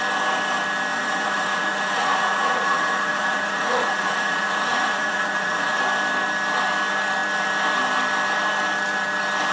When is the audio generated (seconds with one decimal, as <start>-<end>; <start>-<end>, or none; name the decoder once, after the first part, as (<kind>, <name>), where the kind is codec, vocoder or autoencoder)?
0.9-5.8 (vocoder, Vocos)